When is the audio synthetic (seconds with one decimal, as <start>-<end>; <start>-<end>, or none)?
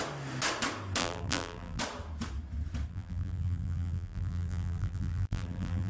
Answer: 1.0-1.8; 2.9-5.9